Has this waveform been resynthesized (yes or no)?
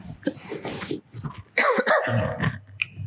no